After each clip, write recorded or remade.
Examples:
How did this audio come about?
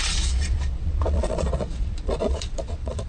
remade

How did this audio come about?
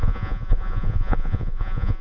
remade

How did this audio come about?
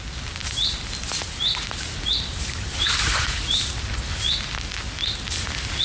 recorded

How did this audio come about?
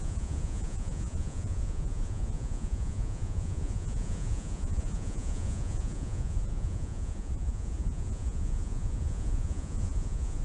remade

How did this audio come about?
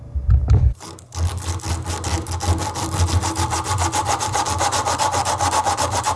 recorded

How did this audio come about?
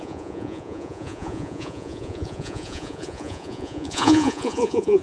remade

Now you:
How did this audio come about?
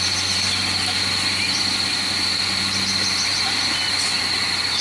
recorded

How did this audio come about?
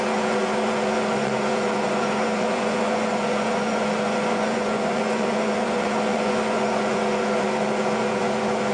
remade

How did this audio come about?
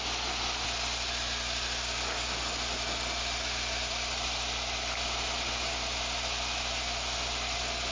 recorded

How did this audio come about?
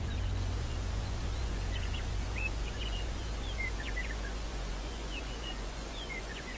remade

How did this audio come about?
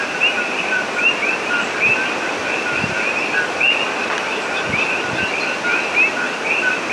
recorded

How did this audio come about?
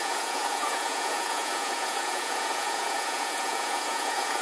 remade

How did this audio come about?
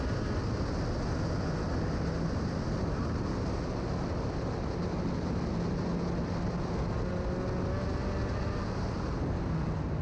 recorded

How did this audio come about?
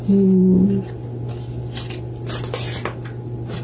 recorded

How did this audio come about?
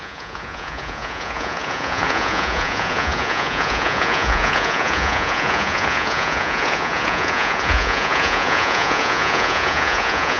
remade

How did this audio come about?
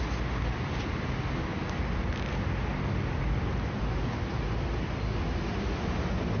recorded